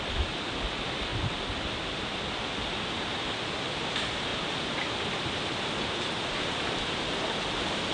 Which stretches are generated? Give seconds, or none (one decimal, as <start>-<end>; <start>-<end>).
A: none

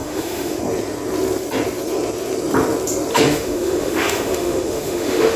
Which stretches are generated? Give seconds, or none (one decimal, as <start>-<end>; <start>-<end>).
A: 0.0-0.6; 3.1-5.4

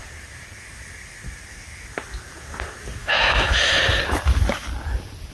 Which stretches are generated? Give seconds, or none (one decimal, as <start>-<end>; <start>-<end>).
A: 3.0-3.8

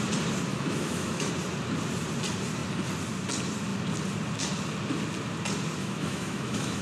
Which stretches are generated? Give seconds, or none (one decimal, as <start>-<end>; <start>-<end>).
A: 0.5-1.3; 5.8-6.8

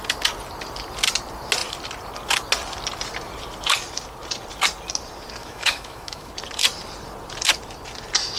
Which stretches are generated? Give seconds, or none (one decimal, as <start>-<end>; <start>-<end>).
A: 5.4-6.3

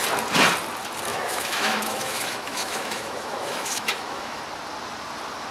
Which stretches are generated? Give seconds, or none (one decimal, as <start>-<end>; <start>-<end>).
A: 1.1-4.4